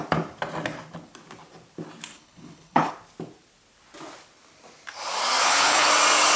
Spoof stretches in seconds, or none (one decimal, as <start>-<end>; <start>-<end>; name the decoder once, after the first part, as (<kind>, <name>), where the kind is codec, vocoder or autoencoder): 2.1-2.9 (codec, HILCodec); 5.4-5.9